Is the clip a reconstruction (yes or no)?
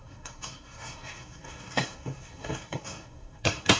yes